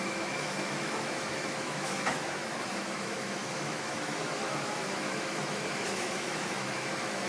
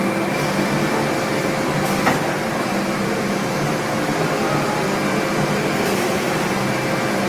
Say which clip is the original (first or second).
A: second